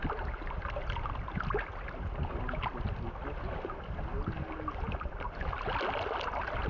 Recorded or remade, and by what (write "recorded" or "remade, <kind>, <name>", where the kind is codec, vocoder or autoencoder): recorded